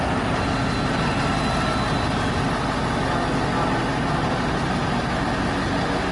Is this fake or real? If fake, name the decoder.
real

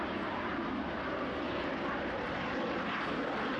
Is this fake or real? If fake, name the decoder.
real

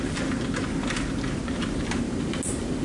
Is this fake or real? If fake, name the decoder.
real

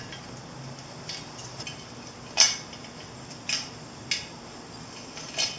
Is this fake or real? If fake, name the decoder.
real